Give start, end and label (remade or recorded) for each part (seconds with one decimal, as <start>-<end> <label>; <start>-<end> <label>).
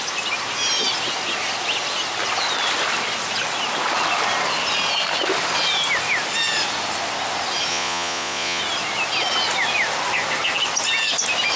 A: 0.0-7.7 recorded; 7.7-8.6 remade; 8.6-11.6 recorded